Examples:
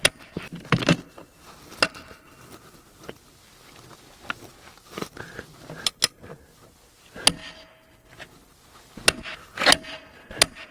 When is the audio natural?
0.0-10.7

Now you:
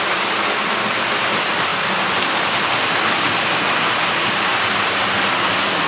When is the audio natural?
0.0-5.9

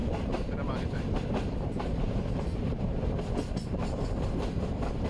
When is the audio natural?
3.1-5.1

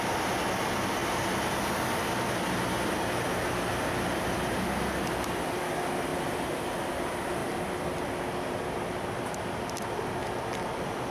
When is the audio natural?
0.0-6.1; 6.8-7.4; 8.2-10.2

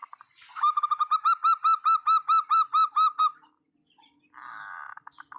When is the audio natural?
0.0-5.4